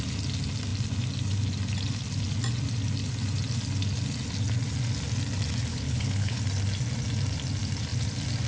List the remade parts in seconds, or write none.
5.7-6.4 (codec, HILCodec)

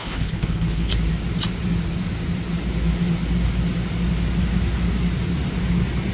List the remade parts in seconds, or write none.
0.0-0.9 (codec, HILCodec)

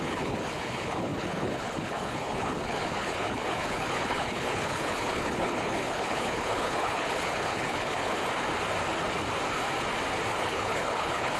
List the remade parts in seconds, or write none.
0.0-8.2 (codec, HILCodec); 10.4-11.4

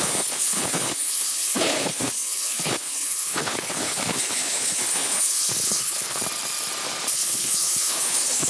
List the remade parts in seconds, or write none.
0.0-6.2 (codec, HILCodec); 7.1-8.5

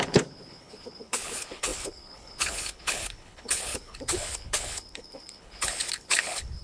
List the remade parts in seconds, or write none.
0.0-6.6 (codec, HILCodec)

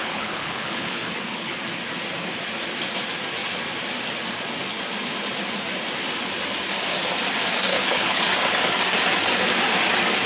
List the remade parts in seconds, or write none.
0.0-1.5 (codec, HILCodec); 7.7-8.2

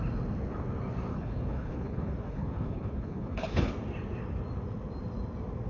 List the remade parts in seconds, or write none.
1.1-3.7 (codec, HILCodec)